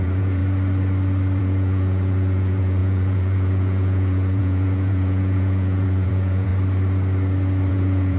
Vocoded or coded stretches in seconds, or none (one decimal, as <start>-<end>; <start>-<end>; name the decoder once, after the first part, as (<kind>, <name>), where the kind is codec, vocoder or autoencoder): 0.0-0.4 (vocoder, Vocos); 1.4-6.5; 7.7-8.2